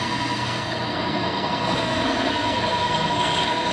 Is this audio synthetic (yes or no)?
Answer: yes